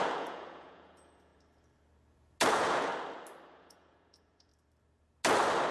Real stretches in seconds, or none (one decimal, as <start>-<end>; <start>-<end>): 1.3-2.5; 2.9-3.5; 4.5-5.7

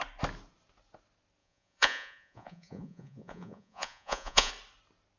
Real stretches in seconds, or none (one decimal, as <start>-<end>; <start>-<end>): 0.0-1.4; 4.5-5.2

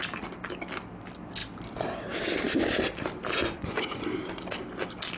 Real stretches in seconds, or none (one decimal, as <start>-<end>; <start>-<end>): 0.0-3.4; 4.0-5.2

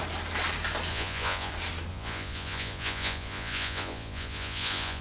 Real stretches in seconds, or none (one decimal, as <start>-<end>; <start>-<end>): 0.0-0.9; 1.5-1.9

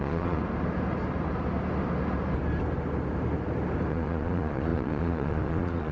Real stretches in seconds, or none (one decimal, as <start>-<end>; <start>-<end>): 0.4-3.9

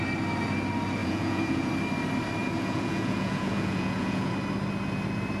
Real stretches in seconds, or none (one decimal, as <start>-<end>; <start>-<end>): 0.0-1.0; 1.7-2.4; 4.3-5.4

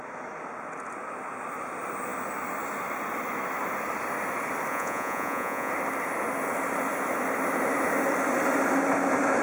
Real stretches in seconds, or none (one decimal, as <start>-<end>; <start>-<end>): 0.0-4.7; 5.7-9.4

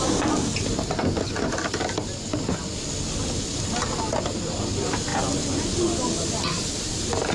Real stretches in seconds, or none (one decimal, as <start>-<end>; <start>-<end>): 0.0-7.3